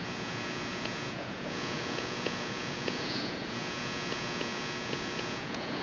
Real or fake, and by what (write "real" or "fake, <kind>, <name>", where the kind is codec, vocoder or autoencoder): fake, vocoder, Vocos